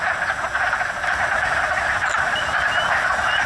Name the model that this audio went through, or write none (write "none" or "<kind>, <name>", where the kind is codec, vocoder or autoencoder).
none